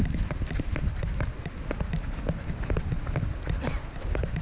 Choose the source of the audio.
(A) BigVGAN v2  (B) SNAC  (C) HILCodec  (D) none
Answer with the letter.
D